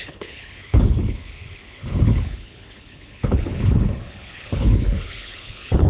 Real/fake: fake